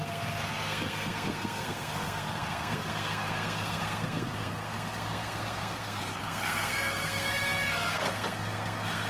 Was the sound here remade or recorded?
remade